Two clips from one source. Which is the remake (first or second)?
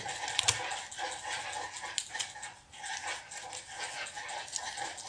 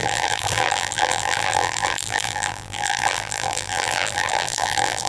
second